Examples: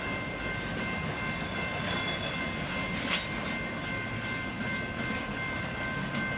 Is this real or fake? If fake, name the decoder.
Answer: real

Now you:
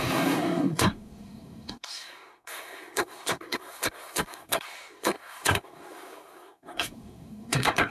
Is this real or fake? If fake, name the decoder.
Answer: fake, codec, SNAC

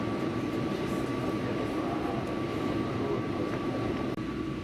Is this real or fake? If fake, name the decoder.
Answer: real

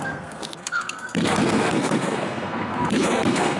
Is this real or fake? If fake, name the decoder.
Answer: fake, codec, SNAC